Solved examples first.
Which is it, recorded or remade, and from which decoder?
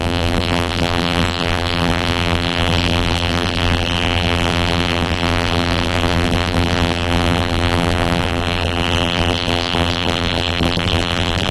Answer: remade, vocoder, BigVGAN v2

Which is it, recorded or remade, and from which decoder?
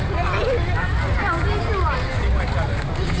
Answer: recorded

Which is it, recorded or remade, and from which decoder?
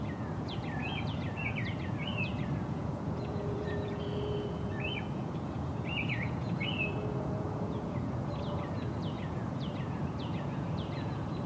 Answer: remade, vocoder, Vocos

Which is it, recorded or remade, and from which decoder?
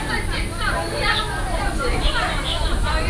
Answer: recorded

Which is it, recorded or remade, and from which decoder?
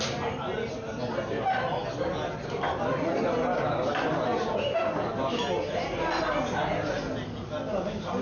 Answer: recorded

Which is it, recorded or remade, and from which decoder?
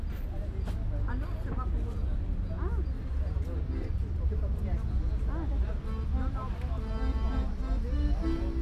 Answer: recorded